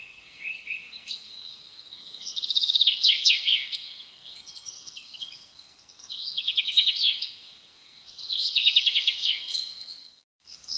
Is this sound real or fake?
fake